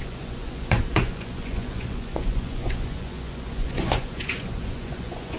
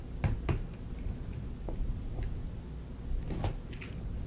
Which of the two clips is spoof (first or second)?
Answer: first